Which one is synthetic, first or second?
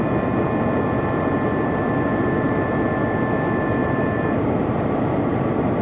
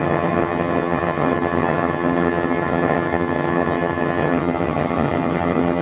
second